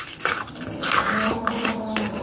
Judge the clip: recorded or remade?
recorded